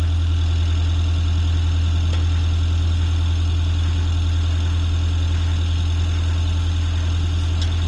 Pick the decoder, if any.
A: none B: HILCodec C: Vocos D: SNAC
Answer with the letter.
A